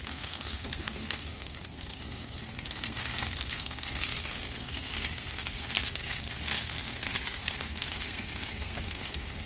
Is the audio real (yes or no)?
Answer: no